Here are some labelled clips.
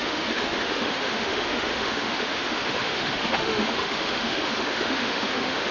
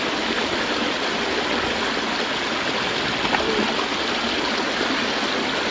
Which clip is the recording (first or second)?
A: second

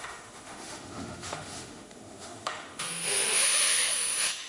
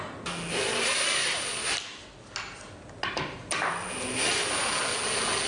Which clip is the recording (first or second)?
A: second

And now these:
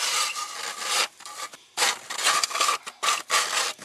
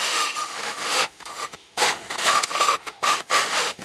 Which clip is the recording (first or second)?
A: first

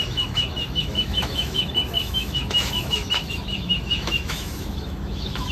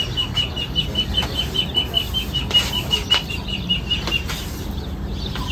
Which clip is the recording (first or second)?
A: second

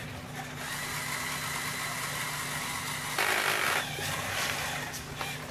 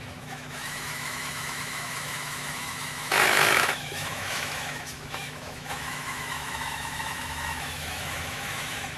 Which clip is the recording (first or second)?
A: first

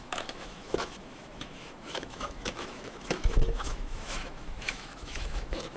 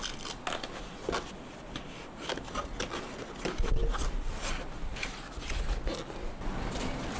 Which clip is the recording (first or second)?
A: second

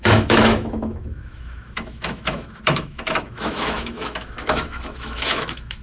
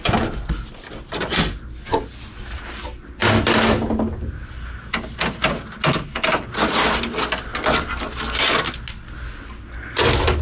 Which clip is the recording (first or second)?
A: second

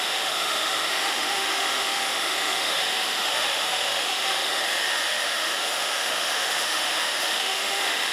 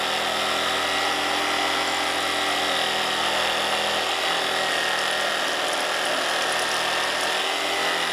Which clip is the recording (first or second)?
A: second